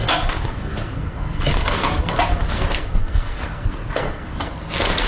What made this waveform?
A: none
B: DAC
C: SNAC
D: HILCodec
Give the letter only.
C